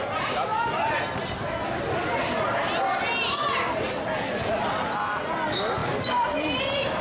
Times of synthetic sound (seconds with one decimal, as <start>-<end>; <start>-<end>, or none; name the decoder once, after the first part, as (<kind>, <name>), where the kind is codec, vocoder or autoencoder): none